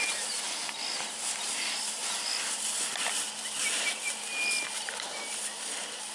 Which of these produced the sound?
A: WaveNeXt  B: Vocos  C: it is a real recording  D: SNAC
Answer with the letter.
C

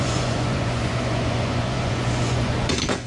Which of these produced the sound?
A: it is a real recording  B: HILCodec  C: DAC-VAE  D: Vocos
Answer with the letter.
D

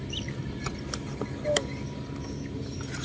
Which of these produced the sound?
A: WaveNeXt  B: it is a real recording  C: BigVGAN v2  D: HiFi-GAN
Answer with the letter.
B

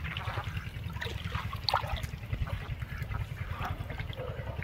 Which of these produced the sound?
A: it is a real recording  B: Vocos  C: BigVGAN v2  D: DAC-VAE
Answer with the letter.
A